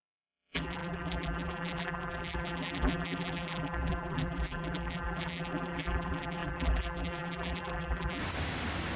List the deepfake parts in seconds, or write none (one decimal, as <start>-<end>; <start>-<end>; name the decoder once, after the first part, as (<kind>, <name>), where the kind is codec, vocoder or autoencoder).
0.0-8.2 (vocoder, BigVGAN v2)